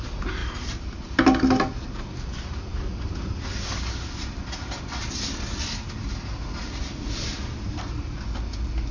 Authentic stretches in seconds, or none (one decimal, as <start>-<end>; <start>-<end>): 0.0-8.9